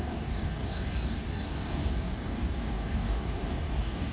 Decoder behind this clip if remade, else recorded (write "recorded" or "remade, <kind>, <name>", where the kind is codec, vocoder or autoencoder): remade, codec, DAC